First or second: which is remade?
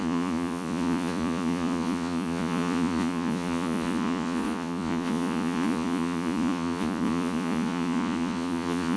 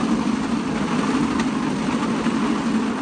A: first